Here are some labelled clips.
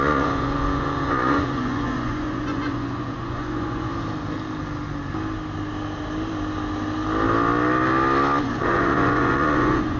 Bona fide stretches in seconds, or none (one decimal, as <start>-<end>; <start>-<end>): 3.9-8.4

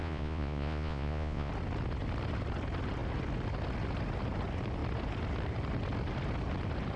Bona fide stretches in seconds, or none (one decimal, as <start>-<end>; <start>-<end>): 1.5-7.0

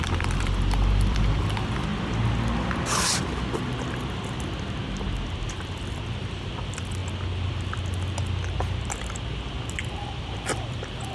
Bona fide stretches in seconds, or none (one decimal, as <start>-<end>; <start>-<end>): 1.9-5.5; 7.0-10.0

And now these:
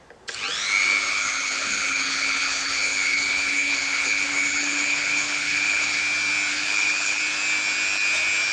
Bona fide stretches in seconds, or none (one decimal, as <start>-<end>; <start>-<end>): 0.0-1.1; 6.0-6.5; 7.2-8.5